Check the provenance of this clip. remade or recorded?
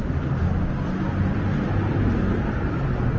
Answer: recorded